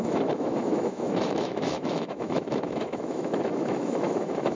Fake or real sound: fake